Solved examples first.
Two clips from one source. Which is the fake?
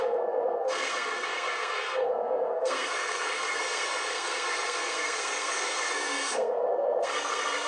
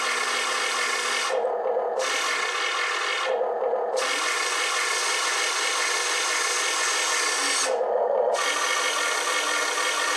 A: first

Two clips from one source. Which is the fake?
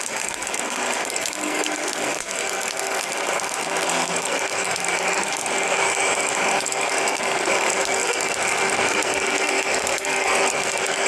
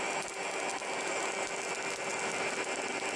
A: first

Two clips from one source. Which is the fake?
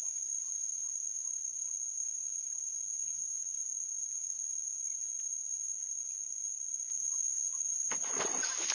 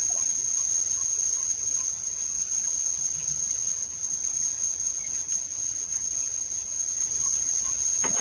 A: second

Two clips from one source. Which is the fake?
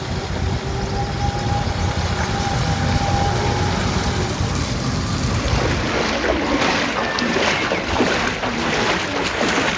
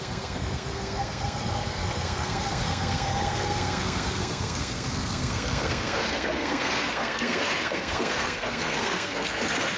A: second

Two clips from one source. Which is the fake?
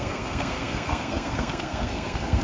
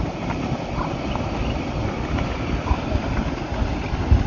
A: first